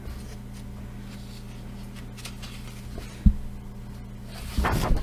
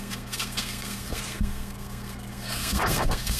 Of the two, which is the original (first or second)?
first